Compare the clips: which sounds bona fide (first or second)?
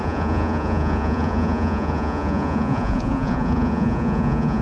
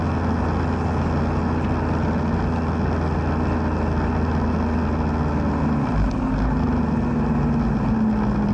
second